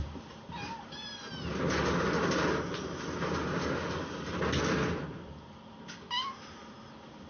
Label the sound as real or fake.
real